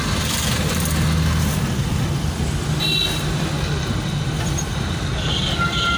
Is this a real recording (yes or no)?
yes